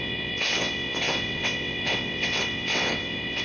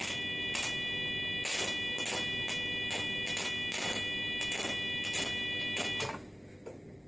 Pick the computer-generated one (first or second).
first